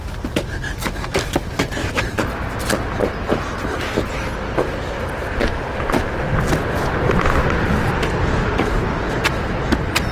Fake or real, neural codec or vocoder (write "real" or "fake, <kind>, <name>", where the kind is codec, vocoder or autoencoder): real